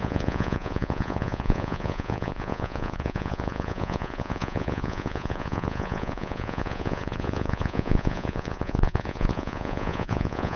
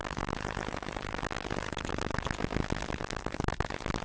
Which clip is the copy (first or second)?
first